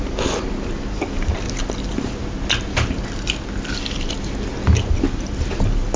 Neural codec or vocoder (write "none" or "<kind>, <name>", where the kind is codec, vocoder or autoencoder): none